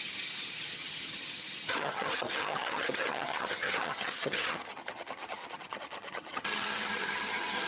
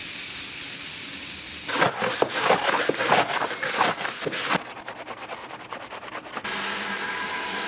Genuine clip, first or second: second